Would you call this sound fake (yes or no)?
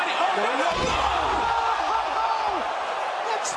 no